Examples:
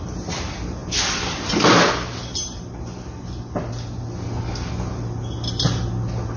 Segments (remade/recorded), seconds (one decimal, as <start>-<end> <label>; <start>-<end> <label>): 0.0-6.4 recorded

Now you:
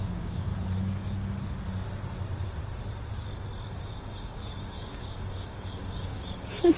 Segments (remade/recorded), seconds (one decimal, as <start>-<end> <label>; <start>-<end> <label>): 0.0-0.5 remade; 0.5-3.7 recorded; 3.7-6.8 remade

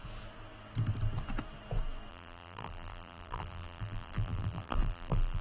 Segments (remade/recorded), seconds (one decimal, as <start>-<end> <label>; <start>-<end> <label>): 0.0-2.1 recorded; 2.1-5.4 remade